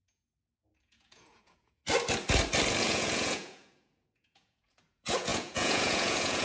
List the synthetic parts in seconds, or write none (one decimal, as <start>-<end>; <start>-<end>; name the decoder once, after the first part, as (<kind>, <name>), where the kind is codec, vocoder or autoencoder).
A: 0.0-1.8 (vocoder, Vocos); 2.8-6.4